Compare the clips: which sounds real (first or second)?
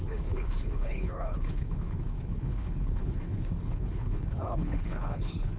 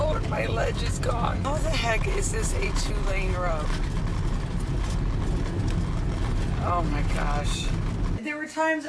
second